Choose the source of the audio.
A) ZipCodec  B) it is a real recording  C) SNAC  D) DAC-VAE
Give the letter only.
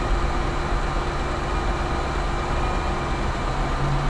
B